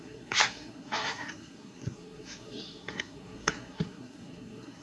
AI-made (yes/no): yes